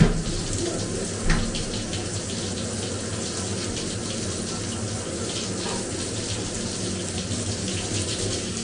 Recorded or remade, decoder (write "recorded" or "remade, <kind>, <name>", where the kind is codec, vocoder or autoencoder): recorded